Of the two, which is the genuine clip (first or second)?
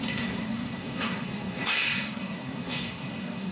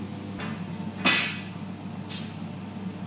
second